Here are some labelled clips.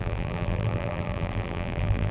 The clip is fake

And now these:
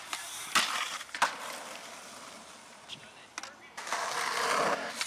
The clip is real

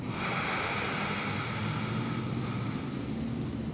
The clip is real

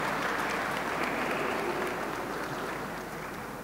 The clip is real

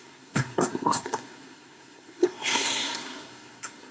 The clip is fake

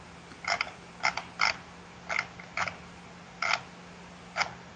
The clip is real